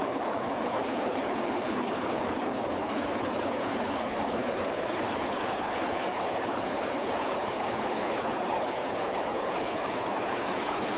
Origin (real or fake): fake